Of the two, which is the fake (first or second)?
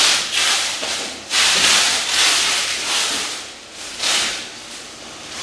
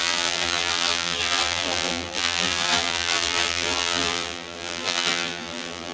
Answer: second